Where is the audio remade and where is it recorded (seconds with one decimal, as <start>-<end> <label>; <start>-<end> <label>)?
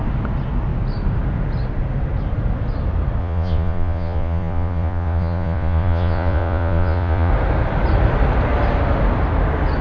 0.0-3.2 recorded; 3.2-7.3 remade; 7.3-9.8 recorded